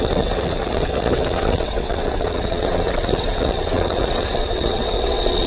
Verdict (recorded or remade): remade